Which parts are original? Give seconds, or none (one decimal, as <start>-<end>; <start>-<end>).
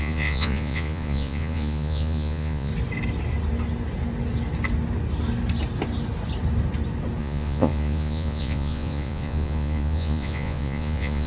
2.7-7.2